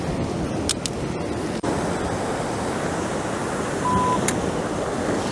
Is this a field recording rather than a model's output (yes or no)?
yes